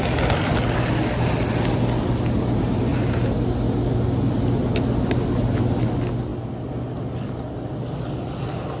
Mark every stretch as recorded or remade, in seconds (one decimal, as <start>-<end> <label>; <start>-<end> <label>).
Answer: 0.0-8.8 recorded